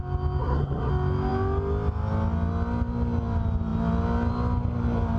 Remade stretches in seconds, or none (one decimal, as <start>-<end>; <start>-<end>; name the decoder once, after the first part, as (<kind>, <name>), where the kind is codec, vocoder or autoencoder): 0.4-0.9 (codec, SNAC)